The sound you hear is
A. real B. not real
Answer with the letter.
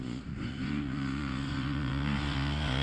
B